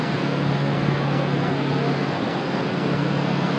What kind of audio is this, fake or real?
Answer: fake